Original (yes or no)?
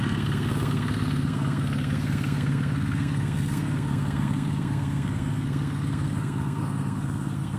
no